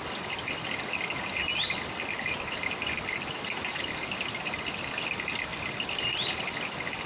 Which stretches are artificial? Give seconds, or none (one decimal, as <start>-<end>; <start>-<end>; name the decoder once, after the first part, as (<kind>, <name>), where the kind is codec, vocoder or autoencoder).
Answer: 5.5-6.1 (vocoder, BigVGAN v2)